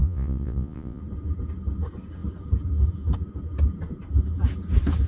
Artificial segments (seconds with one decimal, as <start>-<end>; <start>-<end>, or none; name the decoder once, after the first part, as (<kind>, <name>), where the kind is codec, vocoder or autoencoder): 0.0-1.0 (vocoder, Vocos)